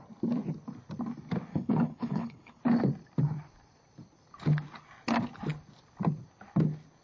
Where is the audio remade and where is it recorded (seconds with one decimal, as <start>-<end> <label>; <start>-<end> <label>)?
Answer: 0.0-1.5 recorded; 1.5-2.6 remade; 2.6-7.0 recorded